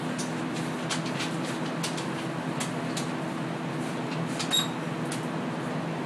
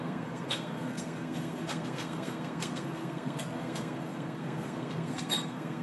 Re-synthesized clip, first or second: second